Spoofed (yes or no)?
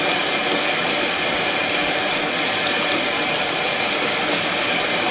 no